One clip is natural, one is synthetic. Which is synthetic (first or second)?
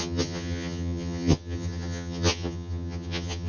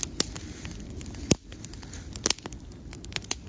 first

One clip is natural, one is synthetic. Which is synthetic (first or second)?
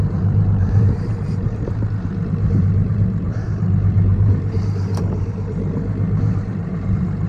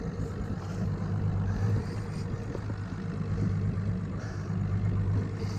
first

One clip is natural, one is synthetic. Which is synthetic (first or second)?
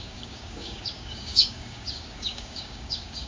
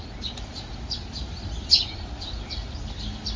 first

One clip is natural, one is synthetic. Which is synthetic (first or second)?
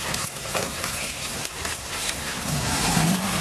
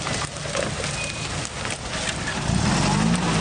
first